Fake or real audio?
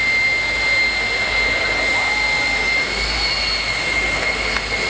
real